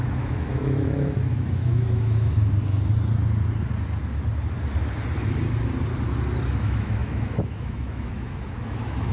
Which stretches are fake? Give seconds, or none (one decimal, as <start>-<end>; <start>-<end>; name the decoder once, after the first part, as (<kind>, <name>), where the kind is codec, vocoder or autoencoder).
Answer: 0.0-2.4 (autoencoder, DAC-VAE); 6.6-9.1